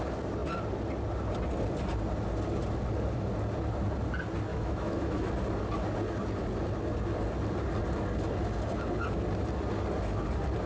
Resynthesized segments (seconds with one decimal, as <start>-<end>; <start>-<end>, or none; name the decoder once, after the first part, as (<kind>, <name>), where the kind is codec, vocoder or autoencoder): 4.5-5.3 (autoencoder, DAC-VAE)